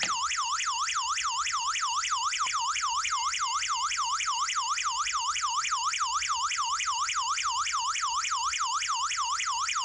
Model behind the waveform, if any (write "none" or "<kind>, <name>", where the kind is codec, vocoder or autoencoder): none